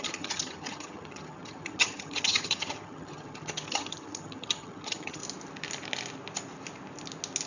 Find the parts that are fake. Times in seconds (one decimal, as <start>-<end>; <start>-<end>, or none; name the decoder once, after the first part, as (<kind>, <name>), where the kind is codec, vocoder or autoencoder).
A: 0.0-5.2 (vocoder, HiFi-GAN)